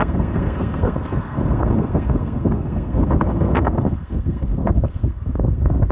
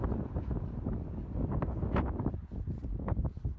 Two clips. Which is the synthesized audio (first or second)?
first